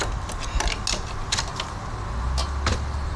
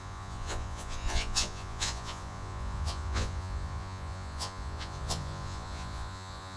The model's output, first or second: second